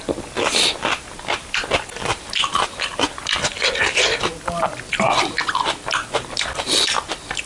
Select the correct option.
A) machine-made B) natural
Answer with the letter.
B